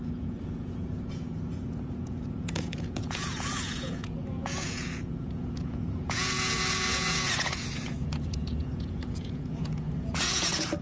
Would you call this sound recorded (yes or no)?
no